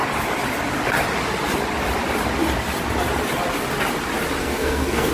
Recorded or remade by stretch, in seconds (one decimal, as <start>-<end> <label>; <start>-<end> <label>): 0.0-4.4 recorded; 4.4-5.1 remade